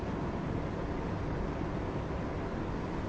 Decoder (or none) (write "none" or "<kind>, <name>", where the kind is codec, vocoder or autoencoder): none